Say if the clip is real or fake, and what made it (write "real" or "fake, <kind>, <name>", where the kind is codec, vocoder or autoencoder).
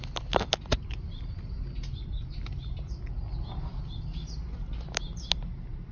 real